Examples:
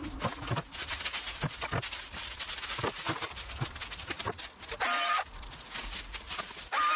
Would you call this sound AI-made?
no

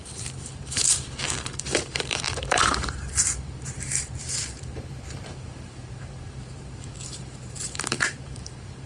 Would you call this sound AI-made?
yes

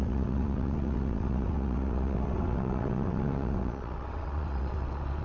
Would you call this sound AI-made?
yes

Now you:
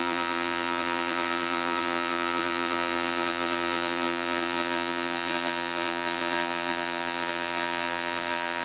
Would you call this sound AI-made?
yes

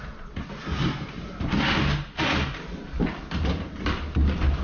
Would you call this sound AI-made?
no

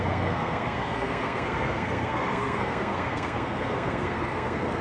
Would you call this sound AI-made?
yes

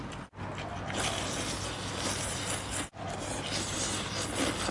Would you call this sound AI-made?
no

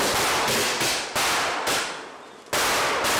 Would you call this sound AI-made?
no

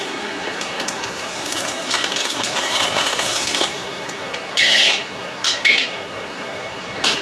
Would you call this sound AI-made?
yes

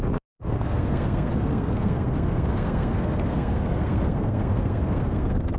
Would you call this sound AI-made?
yes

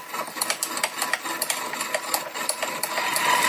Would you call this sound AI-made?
no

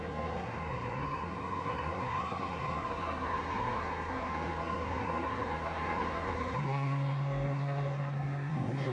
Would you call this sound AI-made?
yes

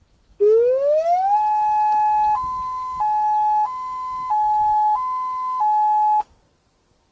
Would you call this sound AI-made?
no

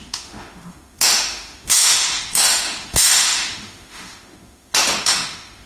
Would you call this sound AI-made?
yes